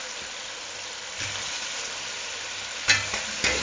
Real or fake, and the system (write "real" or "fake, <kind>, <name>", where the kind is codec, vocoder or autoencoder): real